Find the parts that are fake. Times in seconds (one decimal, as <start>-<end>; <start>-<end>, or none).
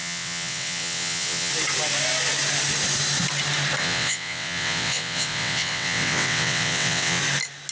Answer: 0.0-1.5; 3.8-7.2